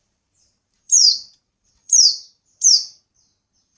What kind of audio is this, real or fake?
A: fake